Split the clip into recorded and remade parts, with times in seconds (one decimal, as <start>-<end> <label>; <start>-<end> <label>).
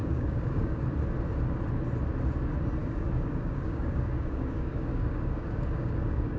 0.0-0.8 remade; 0.8-2.8 recorded; 2.8-6.4 remade